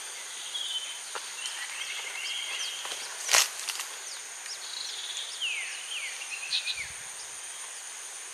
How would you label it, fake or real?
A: real